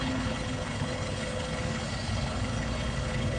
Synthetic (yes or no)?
yes